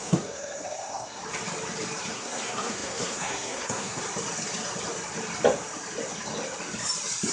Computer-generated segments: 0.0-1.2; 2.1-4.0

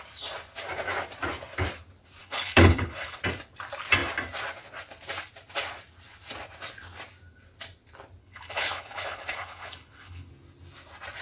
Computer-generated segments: 2.2-3.2; 8.2-10.3

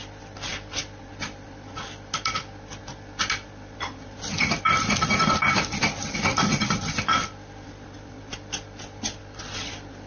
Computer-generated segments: 0.0-10.1

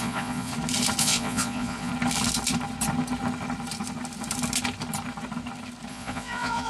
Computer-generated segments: 0.0-0.5; 1.0-1.9; 5.9-6.7

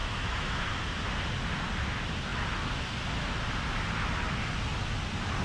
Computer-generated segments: 0.0-0.6

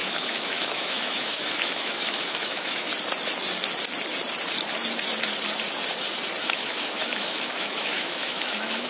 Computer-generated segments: 0.0-2.9; 6.5-8.9